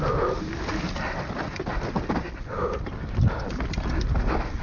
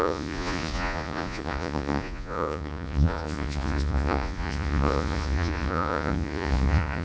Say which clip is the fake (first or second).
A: second